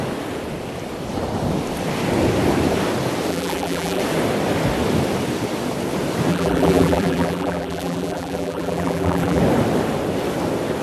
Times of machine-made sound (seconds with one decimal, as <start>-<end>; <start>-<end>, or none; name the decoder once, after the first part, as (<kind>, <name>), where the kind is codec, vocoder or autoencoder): 3.3-4.0 (vocoder, BigVGAN v2); 6.3-9.4